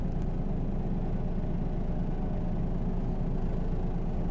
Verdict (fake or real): real